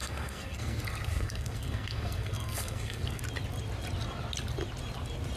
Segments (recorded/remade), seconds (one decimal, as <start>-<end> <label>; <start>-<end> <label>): 0.0-3.2 remade; 3.2-5.4 recorded